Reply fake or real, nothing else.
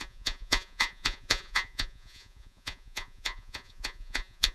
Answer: fake